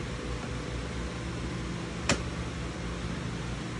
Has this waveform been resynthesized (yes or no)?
no